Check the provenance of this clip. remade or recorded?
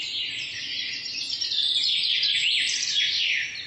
remade